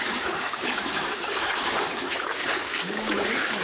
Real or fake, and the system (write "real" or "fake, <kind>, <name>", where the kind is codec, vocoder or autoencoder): fake, codec, DAC